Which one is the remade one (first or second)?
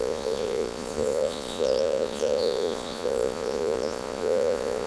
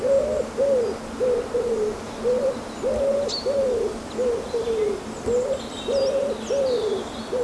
first